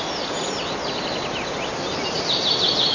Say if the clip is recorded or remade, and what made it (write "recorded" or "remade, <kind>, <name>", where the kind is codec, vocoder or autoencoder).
recorded